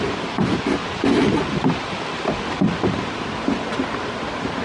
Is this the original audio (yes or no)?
yes